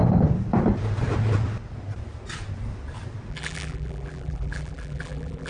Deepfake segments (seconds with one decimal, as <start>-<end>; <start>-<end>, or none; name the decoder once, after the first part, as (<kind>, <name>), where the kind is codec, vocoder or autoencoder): 3.3-5.5 (vocoder, BigVGAN v2)